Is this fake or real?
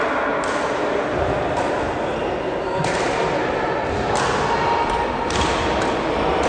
real